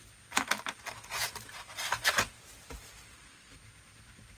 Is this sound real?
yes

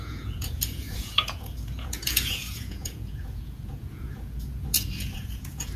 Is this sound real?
no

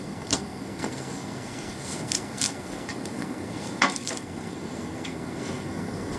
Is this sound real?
no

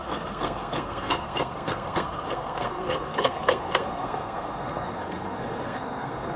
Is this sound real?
no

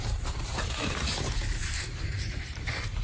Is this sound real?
no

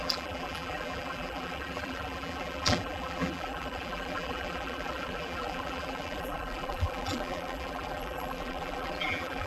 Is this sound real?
no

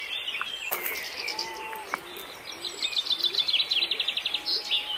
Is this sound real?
yes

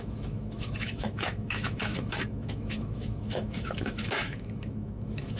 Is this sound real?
no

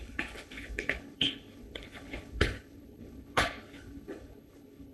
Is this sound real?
no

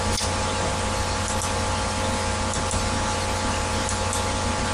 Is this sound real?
yes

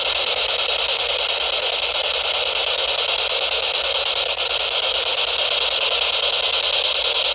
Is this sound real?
yes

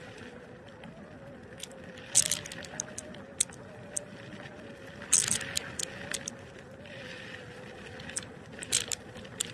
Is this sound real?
yes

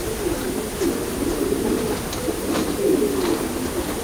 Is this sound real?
yes